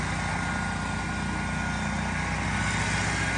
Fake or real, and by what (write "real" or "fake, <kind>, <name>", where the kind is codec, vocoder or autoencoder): real